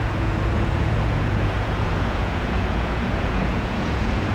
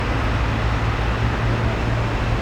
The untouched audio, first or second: second